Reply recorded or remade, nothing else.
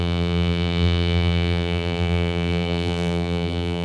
remade